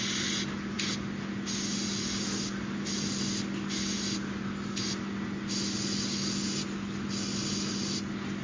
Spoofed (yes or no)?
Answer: no